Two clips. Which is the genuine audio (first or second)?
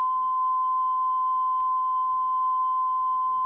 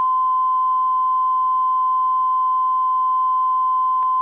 second